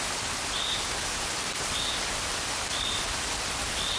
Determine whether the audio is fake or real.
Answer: real